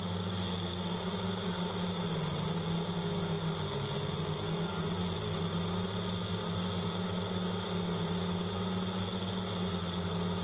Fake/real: real